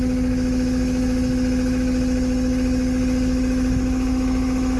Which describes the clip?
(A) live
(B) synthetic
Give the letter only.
B